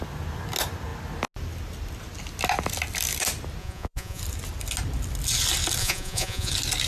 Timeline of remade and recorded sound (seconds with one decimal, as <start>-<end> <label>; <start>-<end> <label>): 0.0-3.6 recorded; 3.6-4.2 remade; 4.2-5.8 recorded; 5.8-6.5 remade; 6.5-6.9 recorded